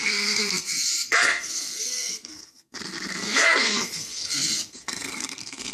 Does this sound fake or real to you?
fake